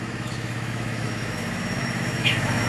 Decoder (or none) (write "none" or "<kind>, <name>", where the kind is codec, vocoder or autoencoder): autoencoder, DAC-VAE